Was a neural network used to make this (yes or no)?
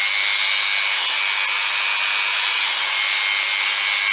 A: no